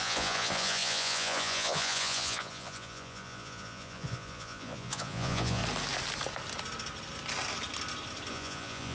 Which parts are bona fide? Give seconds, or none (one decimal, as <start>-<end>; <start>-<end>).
5.6-8.3